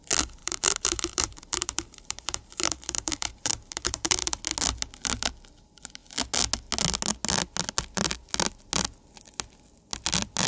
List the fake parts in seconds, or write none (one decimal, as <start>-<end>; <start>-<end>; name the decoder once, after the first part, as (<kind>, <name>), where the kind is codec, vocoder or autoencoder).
0.4-4.4 (vocoder, BigVGAN v2)